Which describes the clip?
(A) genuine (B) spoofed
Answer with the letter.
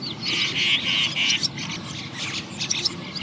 A